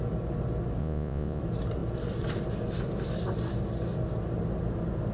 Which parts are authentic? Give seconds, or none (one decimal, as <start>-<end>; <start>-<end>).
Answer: 0.0-0.8; 1.4-5.1